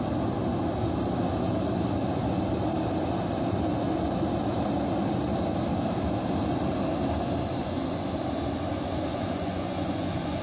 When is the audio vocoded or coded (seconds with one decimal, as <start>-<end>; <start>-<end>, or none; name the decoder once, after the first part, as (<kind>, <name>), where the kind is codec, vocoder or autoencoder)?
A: 7.6-8.1 (vocoder, Vocos); 9.1-10.4